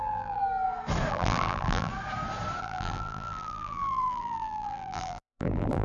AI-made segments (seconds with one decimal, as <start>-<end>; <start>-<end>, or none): 0.0-0.4; 1.1-1.9; 2.6-5.8